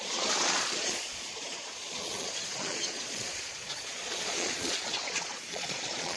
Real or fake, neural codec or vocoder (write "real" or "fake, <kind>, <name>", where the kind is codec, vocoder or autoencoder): fake, vocoder, Vocos